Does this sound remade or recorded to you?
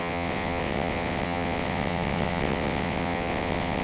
remade